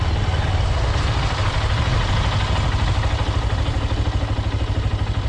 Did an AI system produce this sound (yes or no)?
no